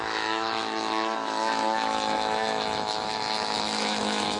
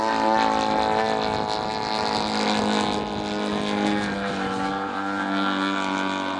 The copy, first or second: first